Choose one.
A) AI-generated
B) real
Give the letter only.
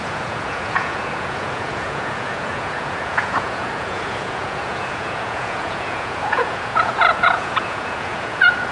A